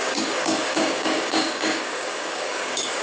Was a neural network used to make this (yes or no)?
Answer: yes